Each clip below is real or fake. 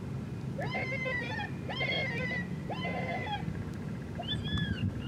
real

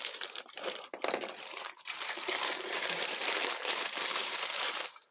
fake